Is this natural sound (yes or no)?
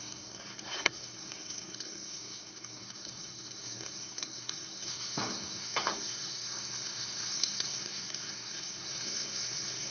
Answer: no